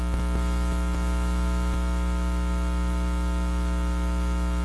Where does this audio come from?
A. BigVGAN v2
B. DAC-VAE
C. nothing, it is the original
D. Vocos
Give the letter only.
C